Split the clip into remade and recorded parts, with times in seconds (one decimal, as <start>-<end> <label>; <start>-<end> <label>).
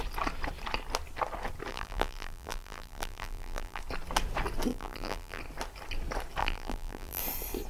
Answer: 0.0-1.7 recorded; 1.7-3.8 remade; 3.8-4.7 recorded; 4.7-5.4 remade; 5.4-6.4 recorded; 6.4-7.2 remade; 7.2-7.7 recorded